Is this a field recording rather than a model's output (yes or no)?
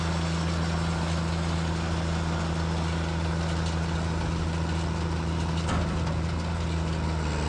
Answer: yes